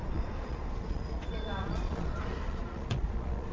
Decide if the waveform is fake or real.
fake